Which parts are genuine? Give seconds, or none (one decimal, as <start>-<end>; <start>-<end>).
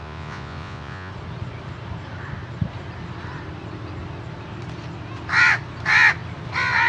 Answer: 1.1-6.9